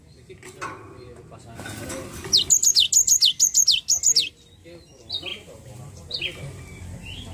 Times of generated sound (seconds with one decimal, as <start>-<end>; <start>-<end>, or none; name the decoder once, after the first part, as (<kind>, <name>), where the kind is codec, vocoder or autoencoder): 5.3-6.2 (vocoder, BigVGAN v2)